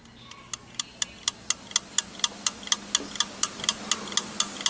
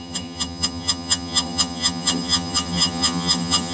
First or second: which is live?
first